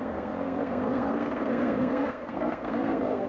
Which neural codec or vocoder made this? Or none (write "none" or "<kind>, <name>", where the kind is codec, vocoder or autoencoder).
codec, SNAC